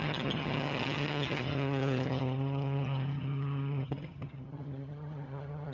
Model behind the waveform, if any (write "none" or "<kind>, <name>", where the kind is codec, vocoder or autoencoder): vocoder, HiFi-GAN